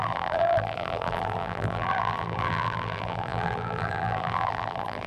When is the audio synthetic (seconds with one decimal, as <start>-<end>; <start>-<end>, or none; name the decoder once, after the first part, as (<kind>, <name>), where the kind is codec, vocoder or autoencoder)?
0.0-5.1 (vocoder, BigVGAN v2)

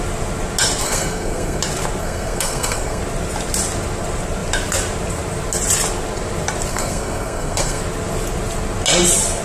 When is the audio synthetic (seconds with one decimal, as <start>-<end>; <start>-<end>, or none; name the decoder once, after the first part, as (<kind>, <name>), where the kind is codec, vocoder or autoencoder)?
0.8-1.6 (codec, SNAC); 2.0-3.0; 6.7-7.8

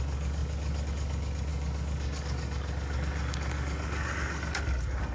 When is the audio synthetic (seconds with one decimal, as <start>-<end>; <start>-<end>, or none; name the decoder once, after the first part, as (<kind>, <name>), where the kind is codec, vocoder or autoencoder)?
0.0-5.1 (codec, DAC)

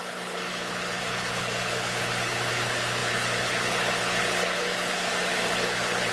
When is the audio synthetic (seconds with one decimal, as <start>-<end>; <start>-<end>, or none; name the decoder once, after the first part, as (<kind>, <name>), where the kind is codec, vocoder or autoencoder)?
0.0-6.1 (codec, HILCodec)

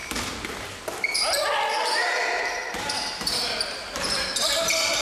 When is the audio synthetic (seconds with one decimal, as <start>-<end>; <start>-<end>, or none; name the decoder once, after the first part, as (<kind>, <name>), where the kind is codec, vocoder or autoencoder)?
1.4-5.0 (vocoder, BigVGAN v2)